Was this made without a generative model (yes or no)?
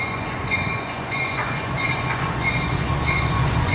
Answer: no